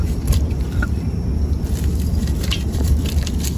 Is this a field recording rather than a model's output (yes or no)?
no